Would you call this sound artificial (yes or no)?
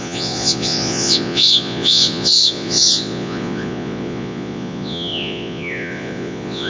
yes